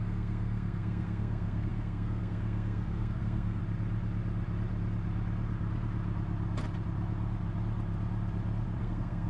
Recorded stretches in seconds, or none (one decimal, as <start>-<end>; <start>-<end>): 3.6-8.8